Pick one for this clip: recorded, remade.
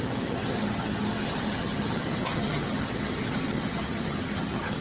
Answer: remade